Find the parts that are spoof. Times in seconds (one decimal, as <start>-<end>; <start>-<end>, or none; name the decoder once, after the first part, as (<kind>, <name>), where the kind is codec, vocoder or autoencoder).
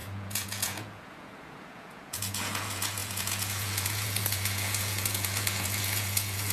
0.0-6.5 (vocoder, Vocos)